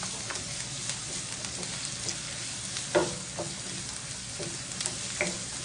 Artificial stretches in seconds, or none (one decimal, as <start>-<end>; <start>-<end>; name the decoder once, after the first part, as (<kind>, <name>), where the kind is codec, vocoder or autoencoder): none